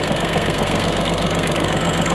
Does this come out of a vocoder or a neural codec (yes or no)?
yes